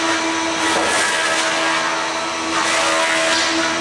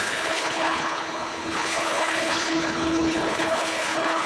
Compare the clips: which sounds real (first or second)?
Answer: first